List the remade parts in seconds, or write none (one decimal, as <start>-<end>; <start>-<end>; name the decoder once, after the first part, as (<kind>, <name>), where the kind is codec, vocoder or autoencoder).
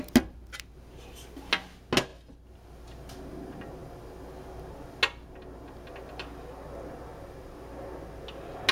none